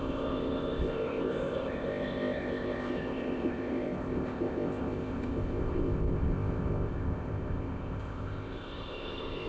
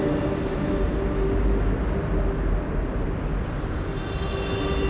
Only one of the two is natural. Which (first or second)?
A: second